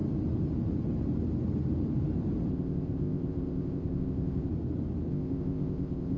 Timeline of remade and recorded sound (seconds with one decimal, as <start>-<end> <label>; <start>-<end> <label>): 0.0-2.5 recorded; 2.5-4.5 remade; 4.5-5.1 recorded; 5.1-6.2 remade